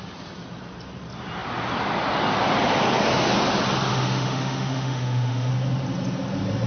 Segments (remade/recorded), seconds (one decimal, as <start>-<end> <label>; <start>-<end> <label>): 0.0-3.9 recorded; 3.9-5.5 remade; 5.5-6.7 recorded